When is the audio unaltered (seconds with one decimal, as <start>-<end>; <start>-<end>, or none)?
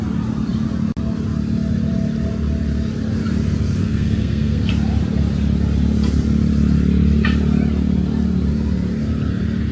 0.0-3.8; 4.7-9.7